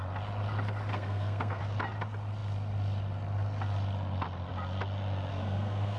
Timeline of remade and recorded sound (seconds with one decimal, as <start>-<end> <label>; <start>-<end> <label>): 0.0-0.9 recorded; 0.9-1.6 remade; 1.6-5.3 recorded; 5.3-6.0 remade